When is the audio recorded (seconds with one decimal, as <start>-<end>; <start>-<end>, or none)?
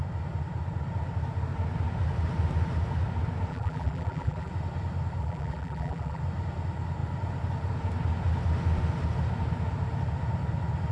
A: 0.0-3.5; 4.5-5.2; 6.2-10.9